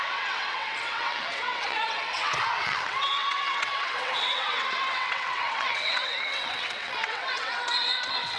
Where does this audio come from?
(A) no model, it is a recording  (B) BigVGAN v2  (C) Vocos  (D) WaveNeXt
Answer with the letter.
D